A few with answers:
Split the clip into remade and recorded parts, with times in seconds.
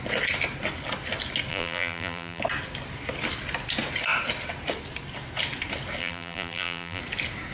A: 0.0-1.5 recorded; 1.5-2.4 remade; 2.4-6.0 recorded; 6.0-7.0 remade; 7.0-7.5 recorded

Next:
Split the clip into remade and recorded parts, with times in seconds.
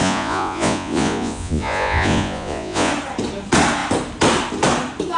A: 0.0-2.9 remade; 2.9-5.2 recorded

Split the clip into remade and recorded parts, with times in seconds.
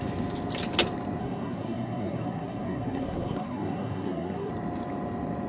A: 0.0-1.2 recorded; 1.2-4.5 remade; 4.5-5.5 recorded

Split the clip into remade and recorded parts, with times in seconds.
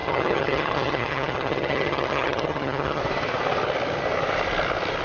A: 0.0-3.0 remade; 3.0-5.0 recorded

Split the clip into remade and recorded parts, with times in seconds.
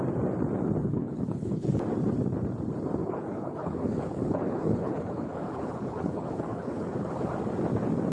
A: 0.0-0.8 recorded; 0.8-1.7 remade; 1.7-3.0 recorded; 3.0-7.1 remade; 7.1-8.1 recorded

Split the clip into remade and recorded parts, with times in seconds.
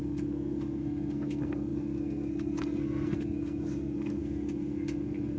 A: 0.0-5.4 remade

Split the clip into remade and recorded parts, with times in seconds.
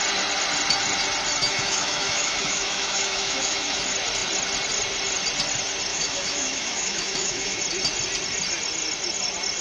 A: 0.0-1.4 recorded; 1.4-3.8 remade; 3.8-5.9 recorded; 5.9-7.6 remade; 7.6-9.6 recorded